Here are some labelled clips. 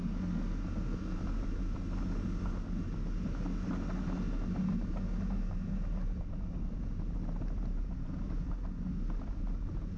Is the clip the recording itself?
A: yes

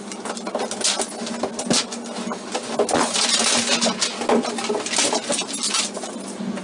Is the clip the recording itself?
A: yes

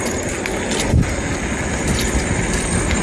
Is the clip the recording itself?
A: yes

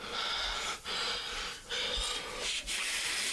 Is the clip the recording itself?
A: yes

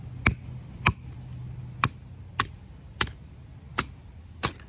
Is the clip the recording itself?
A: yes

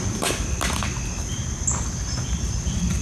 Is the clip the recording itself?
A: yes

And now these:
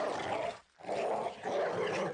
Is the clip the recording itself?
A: yes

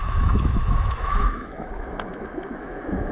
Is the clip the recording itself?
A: no